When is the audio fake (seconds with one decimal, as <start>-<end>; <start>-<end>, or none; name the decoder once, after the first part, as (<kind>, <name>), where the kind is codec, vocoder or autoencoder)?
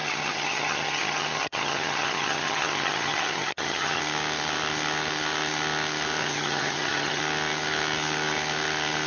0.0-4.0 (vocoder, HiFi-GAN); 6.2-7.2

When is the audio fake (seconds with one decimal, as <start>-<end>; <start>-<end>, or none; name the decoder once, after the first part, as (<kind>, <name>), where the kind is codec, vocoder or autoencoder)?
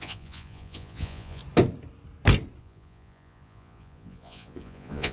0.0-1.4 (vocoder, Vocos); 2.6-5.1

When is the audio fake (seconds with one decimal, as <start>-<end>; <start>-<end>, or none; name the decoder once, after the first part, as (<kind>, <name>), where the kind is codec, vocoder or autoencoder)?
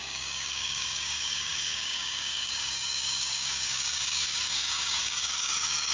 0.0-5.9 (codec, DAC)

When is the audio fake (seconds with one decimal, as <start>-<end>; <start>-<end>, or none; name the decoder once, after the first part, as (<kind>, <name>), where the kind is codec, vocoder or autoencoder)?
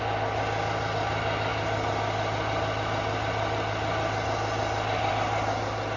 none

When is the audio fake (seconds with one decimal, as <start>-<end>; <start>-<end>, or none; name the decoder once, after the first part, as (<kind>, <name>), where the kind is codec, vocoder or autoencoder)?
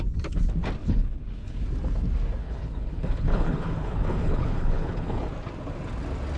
0.8-1.6 (codec, HILCodec); 2.4-5.2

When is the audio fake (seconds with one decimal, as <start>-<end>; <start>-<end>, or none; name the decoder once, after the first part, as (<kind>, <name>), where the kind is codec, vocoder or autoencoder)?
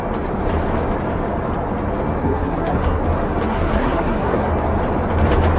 2.2-3.0 (codec, SNAC); 3.5-4.5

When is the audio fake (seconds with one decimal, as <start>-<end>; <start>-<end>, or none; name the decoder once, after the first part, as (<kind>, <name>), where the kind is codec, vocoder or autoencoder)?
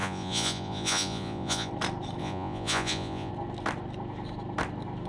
0.0-1.7 (vocoder, Vocos); 2.2-3.3